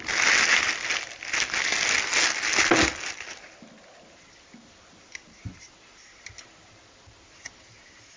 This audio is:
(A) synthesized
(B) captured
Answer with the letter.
B